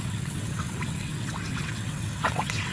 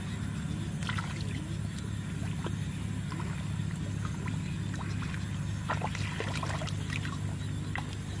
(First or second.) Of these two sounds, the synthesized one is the first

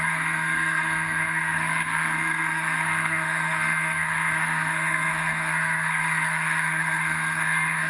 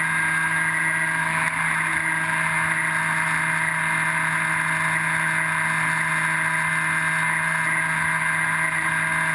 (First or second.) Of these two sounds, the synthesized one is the first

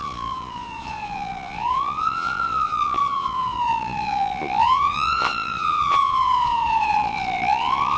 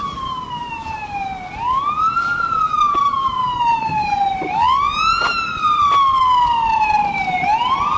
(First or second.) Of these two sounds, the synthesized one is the first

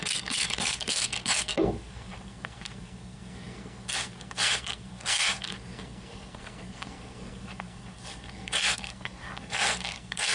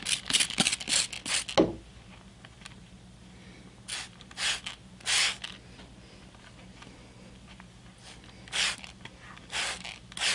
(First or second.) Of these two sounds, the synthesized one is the first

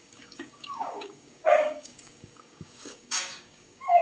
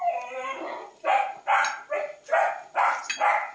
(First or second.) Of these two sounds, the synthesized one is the first